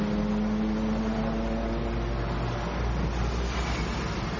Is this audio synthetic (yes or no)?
no